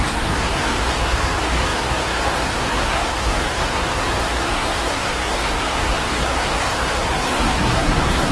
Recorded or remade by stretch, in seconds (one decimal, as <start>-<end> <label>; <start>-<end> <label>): 0.0-8.3 remade